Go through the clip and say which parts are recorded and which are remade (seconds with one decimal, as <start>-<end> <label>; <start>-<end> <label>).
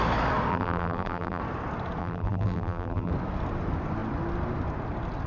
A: 0.0-0.5 recorded; 0.5-1.4 remade; 1.4-2.0 recorded; 2.0-3.1 remade; 3.1-5.3 recorded